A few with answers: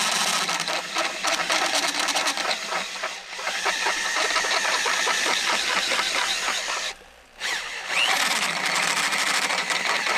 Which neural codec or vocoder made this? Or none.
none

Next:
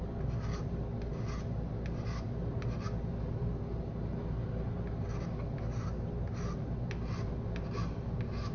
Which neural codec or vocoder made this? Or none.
none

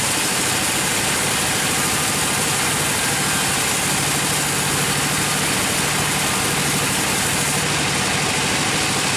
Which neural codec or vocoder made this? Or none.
none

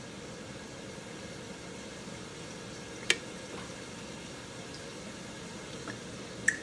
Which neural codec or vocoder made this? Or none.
none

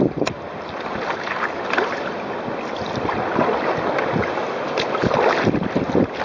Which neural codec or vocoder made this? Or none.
none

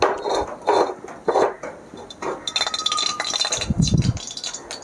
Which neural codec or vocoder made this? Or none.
none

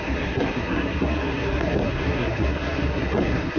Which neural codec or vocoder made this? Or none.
codec, SNAC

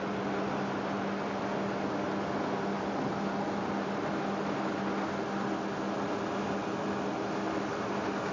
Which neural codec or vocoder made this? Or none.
none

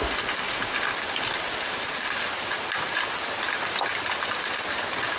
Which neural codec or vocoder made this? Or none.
none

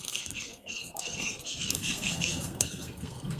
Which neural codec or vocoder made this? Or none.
codec, SNAC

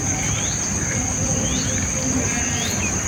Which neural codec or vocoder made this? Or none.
none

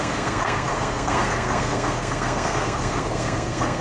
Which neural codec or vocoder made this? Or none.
codec, SNAC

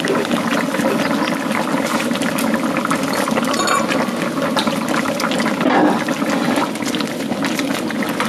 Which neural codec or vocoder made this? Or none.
none